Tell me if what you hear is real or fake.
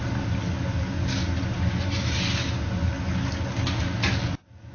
real